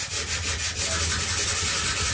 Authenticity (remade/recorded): recorded